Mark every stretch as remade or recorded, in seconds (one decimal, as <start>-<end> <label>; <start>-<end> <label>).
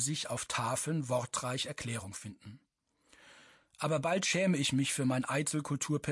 0.0-6.1 recorded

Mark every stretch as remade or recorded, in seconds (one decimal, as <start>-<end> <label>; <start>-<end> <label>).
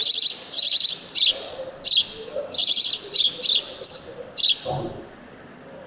0.0-1.2 remade; 1.2-2.6 recorded; 2.6-3.2 remade; 3.2-5.9 recorded